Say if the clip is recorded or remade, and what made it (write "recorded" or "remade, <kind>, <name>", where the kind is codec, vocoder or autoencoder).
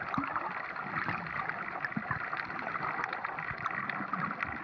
recorded